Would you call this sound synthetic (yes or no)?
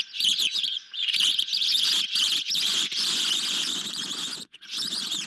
yes